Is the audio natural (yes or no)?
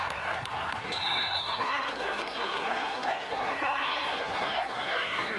no